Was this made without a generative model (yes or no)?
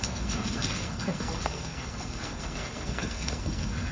no